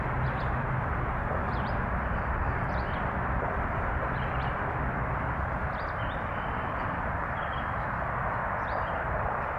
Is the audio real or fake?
fake